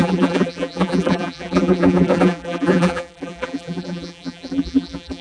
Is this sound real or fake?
fake